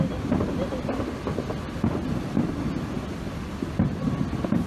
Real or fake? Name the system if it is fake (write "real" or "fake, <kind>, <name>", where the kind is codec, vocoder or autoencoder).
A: real